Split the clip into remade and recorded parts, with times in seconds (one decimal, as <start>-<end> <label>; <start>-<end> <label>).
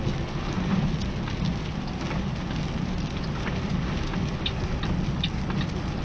0.0-6.0 recorded